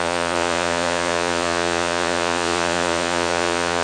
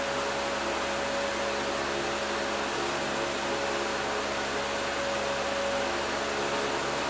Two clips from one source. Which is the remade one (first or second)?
first